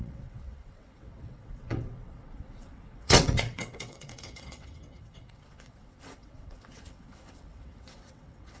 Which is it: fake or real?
fake